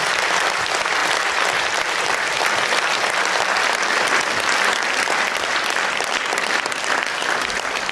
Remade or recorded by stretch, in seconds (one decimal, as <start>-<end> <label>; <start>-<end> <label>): 0.0-7.9 recorded